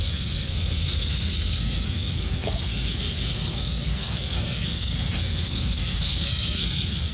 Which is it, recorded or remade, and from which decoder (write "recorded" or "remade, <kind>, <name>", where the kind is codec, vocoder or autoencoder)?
remade, codec, SNAC